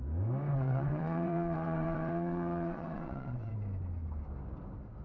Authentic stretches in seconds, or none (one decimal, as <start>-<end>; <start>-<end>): 0.0-0.5; 3.5-5.0